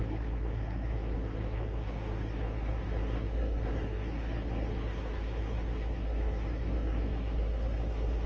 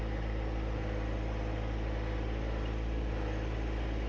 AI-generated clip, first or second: first